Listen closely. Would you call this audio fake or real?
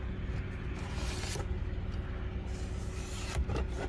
real